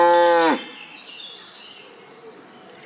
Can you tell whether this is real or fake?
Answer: real